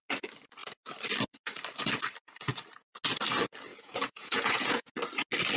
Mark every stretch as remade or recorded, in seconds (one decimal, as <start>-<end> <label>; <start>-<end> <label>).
0.0-3.7 recorded; 3.7-4.9 remade; 4.9-5.6 recorded